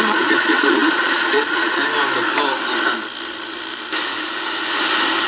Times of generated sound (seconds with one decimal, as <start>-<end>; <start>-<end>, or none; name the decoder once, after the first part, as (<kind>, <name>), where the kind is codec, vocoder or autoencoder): 0.0-1.8 (vocoder, Vocos)